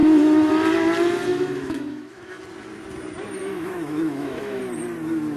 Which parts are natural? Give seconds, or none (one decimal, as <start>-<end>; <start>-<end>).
0.5-1.3; 2.4-3.4; 4.6-5.4

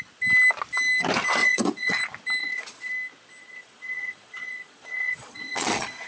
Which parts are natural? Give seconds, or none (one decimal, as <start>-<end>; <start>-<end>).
0.0-1.4; 2.0-2.4; 2.9-3.4

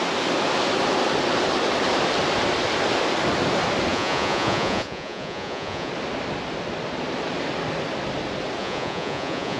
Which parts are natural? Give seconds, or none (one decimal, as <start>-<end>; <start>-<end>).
0.0-3.9; 5.9-8.6

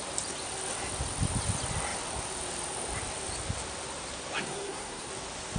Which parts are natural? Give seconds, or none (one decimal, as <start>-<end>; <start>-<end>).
0.0-4.4; 5.1-5.6

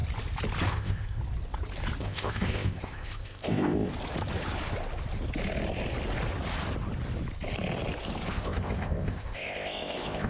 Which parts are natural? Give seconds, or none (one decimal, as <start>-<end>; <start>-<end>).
0.0-0.7; 1.2-2.0; 3.9-8.3